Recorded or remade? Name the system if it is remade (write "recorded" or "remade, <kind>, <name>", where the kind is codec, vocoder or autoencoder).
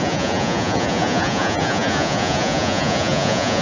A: remade, vocoder, Vocos